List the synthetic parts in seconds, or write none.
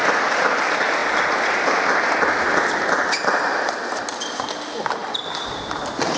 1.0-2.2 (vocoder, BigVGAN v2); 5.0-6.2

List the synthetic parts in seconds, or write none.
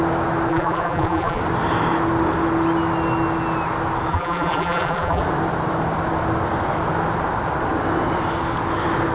0.5-1.4 (vocoder, BigVGAN v2); 4.1-5.2